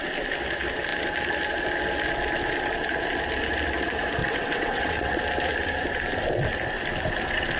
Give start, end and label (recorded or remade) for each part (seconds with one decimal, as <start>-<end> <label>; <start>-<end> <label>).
0.0-4.2 recorded; 4.2-5.2 remade; 5.2-7.6 recorded